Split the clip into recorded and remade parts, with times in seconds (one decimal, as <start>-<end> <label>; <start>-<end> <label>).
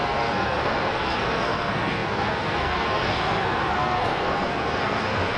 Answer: 0.0-5.4 remade